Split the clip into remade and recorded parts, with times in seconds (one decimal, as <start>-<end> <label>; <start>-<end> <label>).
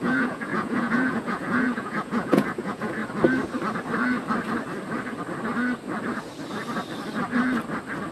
0.0-3.0 remade; 3.0-8.1 recorded